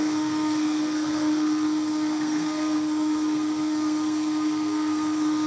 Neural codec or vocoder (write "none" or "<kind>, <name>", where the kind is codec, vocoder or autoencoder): codec, SNAC